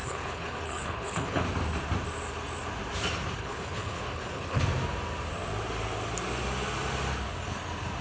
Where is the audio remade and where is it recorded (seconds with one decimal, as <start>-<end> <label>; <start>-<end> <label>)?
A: 0.0-1.4 remade; 1.4-3.4 recorded; 3.4-4.6 remade; 4.6-8.0 recorded